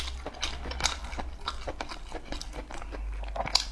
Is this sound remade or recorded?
recorded